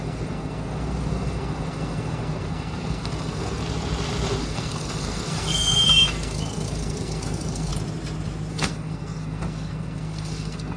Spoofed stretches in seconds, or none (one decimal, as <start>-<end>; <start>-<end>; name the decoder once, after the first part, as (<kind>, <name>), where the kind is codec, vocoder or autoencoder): 0.0-3.6 (codec, SNAC); 4.4-7.7; 8.5-10.8